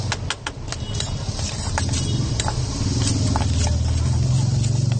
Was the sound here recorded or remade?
recorded